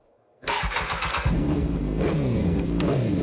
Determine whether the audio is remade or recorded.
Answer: remade